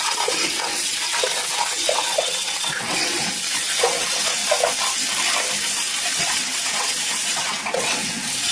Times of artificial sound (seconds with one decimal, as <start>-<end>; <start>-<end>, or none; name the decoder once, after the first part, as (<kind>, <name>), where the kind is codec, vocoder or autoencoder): 0.0-4.4 (vocoder, WaveNeXt); 6.2-8.5

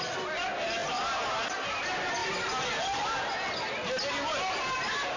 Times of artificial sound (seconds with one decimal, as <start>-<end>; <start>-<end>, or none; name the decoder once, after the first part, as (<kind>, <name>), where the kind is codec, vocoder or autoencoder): 2.2-3.3 (vocoder, BigVGAN v2)

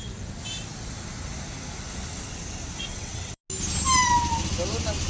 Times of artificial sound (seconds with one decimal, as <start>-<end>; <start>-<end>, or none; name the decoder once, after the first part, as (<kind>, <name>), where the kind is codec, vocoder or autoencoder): 2.9-3.4 (vocoder, WaveNeXt)

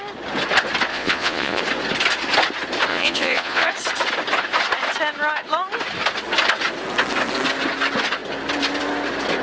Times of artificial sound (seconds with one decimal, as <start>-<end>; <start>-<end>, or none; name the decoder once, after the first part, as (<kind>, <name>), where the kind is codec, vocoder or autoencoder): 0.9-1.6 (vocoder, Vocos); 2.9-3.7

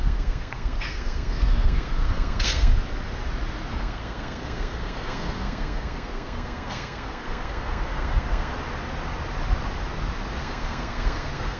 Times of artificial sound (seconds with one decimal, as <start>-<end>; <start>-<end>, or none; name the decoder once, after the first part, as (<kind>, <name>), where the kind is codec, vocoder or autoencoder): 0.0-2.7 (codec, SNAC); 3.7-8.5; 10.4-11.6

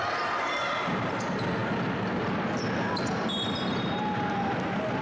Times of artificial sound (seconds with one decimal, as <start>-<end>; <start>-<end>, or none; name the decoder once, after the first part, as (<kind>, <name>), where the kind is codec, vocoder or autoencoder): none

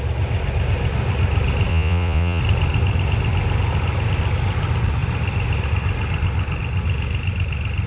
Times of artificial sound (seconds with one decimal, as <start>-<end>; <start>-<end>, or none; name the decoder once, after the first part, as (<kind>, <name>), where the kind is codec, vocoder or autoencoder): 1.7-2.4 (vocoder, Vocos)